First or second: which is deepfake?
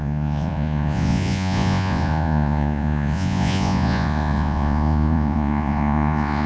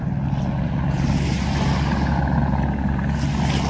first